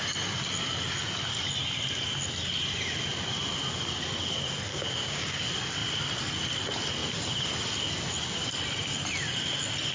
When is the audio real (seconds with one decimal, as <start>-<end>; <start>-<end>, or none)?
0.0-4.7; 5.2-9.9